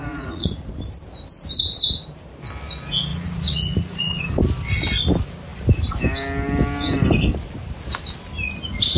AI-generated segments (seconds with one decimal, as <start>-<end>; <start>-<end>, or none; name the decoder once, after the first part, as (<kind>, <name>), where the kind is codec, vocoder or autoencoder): 0.0-0.7 (vocoder, Vocos); 3.1-4.2